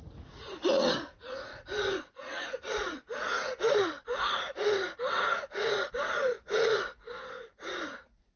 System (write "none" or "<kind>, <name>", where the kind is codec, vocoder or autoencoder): vocoder, Vocos